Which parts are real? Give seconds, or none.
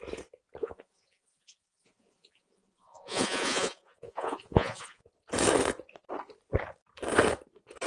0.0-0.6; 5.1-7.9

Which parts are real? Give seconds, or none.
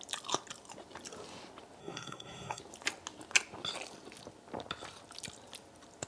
0.0-1.8; 2.6-6.1